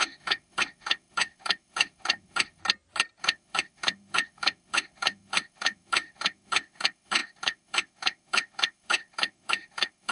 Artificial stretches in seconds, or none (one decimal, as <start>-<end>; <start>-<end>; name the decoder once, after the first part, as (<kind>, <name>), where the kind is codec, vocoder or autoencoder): 0.0-2.6 (autoencoder, DAC-VAE); 3.2-10.1